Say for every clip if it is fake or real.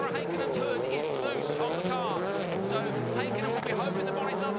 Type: real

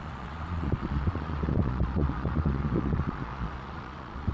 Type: fake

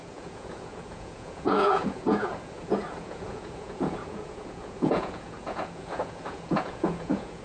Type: fake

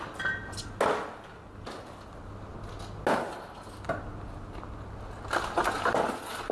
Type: real